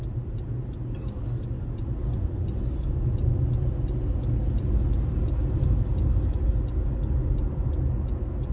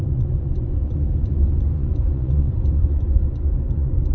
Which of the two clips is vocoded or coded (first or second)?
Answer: second